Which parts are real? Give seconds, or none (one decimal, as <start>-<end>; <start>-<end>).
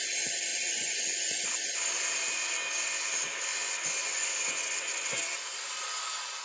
0.0-0.5; 1.7-3.5; 5.2-6.4